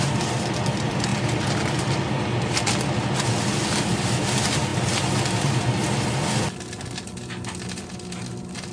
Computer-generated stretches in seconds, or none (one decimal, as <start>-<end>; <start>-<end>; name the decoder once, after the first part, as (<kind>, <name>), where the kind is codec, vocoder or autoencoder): none